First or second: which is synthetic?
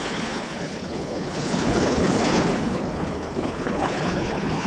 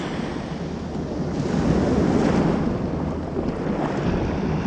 first